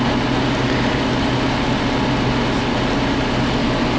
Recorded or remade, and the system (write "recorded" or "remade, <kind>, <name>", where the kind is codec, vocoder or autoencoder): recorded